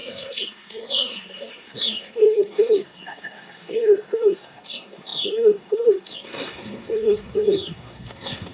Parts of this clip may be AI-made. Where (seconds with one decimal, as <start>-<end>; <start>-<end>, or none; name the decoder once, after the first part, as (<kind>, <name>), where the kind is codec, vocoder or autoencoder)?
0.0-8.5 (codec, SNAC)